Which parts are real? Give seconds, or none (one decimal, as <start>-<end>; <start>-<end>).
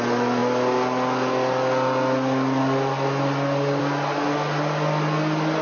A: 0.0-5.6